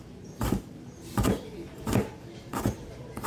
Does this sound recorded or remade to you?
remade